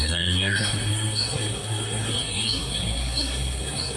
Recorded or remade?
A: remade